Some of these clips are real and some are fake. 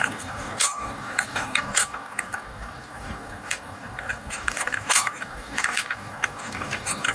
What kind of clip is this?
fake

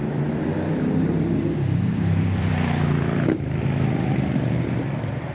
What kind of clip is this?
fake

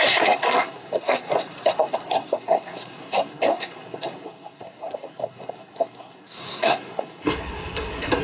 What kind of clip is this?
fake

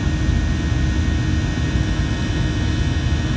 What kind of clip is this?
real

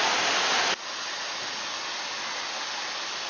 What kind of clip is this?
real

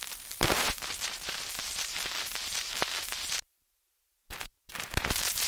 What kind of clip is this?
fake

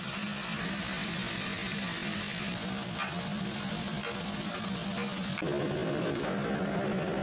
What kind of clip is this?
real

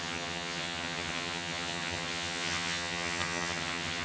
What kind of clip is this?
fake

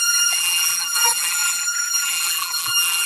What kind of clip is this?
fake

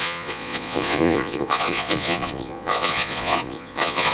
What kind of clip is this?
fake